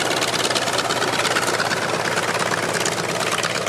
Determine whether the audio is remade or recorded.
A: recorded